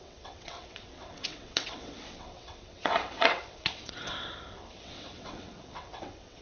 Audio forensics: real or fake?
fake